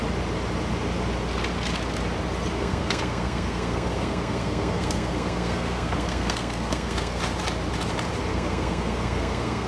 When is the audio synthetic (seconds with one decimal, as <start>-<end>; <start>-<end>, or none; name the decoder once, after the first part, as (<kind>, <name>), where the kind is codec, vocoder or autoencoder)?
2.6-7.2 (codec, SNAC); 8.3-9.7